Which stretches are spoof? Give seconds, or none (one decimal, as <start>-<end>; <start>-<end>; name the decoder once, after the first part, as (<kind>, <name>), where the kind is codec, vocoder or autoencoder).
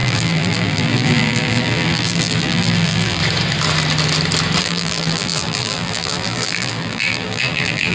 0.0-3.2 (vocoder, BigVGAN v2); 4.6-7.9